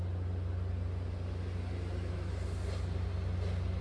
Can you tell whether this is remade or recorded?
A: recorded